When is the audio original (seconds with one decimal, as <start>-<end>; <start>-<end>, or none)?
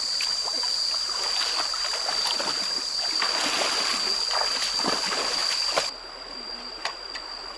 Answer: 0.0-7.6